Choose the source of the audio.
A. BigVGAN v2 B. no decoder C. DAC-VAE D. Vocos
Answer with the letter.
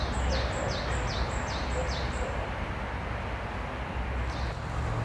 B